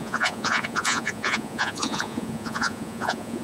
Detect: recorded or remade remade